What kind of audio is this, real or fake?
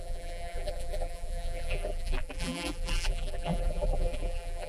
fake